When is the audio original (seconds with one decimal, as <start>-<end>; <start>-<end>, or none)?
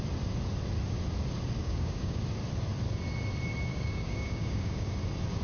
0.0-1.6; 2.2-3.7; 4.9-5.4